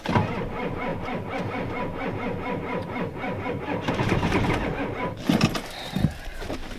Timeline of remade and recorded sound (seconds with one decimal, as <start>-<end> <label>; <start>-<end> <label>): 0.0-0.9 remade; 0.9-3.5 recorded; 3.5-6.8 remade